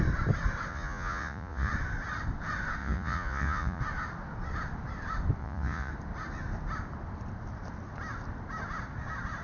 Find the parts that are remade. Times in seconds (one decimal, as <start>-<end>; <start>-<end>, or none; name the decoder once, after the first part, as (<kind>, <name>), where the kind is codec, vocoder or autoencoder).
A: 0.7-1.7 (vocoder, Vocos); 2.8-3.8; 5.4-5.9